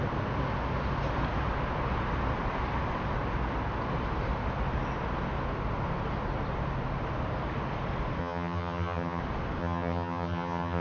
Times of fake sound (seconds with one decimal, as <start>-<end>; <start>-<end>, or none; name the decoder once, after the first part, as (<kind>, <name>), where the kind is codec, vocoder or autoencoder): 8.2-9.2 (vocoder, HiFi-GAN); 9.6-10.8